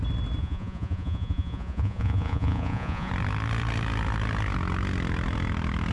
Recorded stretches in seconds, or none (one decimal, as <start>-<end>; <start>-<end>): 0.0-0.4; 3.1-5.9